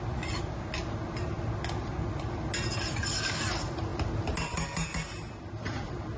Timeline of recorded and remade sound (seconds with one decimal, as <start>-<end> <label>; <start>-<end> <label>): 0.0-6.2 recorded